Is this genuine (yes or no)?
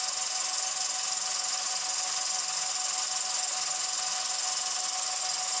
yes